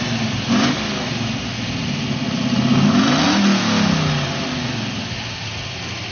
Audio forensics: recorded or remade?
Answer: recorded